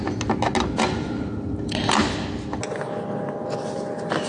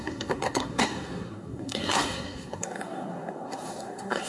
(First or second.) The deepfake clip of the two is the second